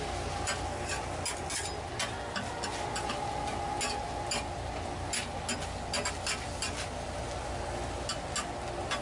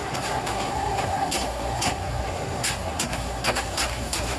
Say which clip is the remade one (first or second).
second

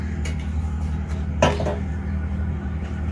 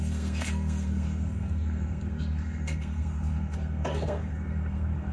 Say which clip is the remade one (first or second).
second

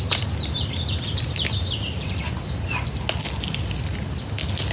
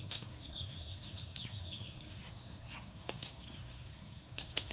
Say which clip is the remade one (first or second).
second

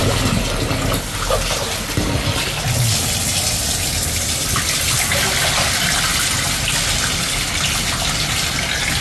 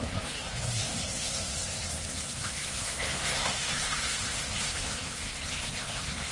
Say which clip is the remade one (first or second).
second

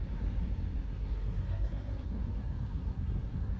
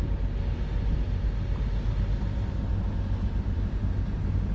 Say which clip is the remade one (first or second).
first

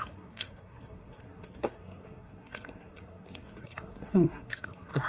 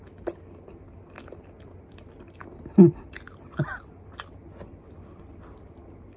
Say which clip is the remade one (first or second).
first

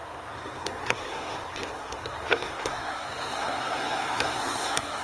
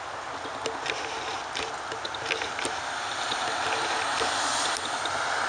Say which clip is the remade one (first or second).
first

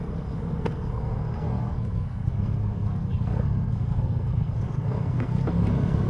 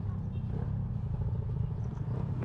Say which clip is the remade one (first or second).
first